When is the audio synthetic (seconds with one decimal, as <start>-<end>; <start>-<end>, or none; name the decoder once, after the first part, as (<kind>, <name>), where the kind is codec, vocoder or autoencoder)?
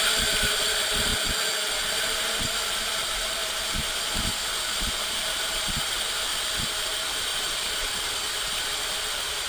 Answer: 0.0-1.1 (vocoder, BigVGAN v2); 1.7-9.5